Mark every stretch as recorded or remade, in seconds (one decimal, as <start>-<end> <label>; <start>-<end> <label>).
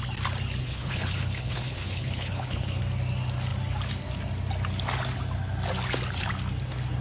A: 0.0-0.6 recorded; 0.6-2.8 remade; 2.8-7.0 recorded